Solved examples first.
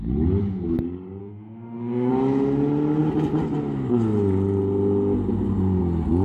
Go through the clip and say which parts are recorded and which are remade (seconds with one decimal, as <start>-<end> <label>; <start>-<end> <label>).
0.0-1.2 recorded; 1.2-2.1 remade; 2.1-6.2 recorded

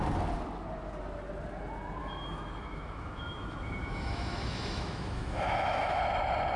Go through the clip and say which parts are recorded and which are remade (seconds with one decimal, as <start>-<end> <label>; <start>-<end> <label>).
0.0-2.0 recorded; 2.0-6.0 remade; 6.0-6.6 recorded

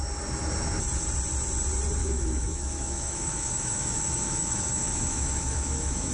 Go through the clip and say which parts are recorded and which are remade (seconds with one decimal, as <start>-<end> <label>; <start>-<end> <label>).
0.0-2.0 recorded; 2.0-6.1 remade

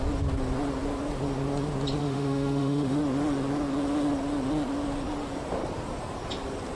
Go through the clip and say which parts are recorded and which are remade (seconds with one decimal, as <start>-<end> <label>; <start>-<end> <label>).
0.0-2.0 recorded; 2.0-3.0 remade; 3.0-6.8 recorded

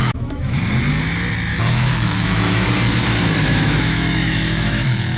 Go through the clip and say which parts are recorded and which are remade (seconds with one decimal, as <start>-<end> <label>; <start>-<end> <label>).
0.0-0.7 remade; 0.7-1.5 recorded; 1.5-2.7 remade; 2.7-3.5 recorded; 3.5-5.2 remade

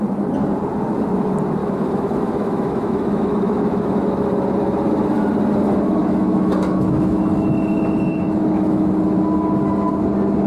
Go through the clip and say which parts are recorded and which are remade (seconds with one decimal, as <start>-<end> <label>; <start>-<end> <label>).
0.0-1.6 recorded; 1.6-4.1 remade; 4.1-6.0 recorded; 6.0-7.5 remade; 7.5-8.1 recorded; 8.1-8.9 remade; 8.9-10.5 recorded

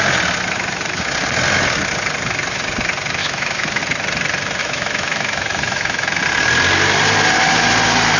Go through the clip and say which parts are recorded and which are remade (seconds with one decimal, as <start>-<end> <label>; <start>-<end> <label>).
0.0-3.2 recorded; 3.2-3.8 remade; 3.8-4.6 recorded; 4.6-6.2 remade; 6.2-8.2 recorded